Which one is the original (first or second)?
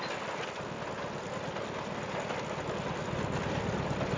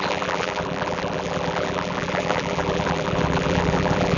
first